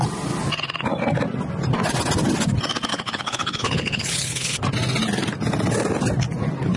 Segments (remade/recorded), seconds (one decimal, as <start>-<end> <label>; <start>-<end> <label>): 0.0-2.9 recorded; 2.9-4.6 remade; 4.6-6.8 recorded